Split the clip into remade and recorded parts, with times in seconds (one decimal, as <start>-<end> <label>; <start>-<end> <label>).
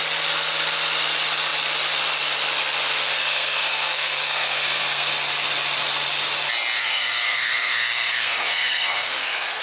0.0-3.2 recorded; 3.2-5.1 remade; 5.1-6.8 recorded; 6.8-9.6 remade